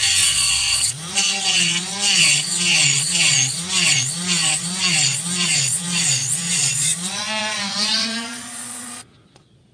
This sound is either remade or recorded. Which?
remade